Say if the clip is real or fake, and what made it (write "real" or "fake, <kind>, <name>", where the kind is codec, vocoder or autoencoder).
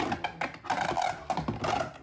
real